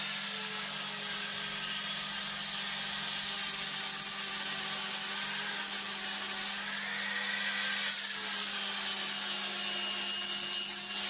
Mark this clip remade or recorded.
recorded